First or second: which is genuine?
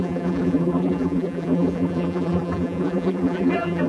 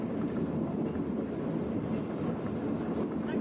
second